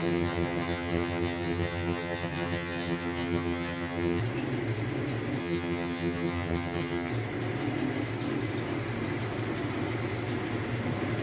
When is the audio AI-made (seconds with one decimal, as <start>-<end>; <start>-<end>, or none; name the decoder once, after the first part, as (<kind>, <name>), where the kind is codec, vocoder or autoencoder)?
0.0-4.2 (vocoder, HiFi-GAN); 5.4-7.1